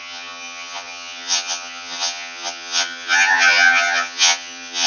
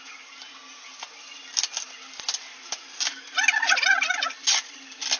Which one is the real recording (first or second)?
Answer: second